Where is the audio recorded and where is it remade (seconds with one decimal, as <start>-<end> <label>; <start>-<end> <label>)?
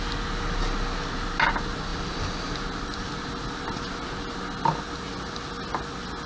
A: 0.0-6.3 recorded